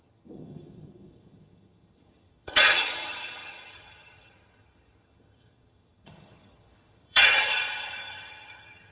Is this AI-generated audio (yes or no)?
yes